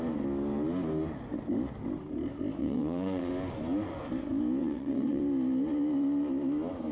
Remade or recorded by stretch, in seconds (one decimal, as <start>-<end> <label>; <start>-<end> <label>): 0.0-2.6 recorded; 2.6-3.3 remade; 3.3-4.6 recorded; 4.6-5.2 remade; 5.2-6.9 recorded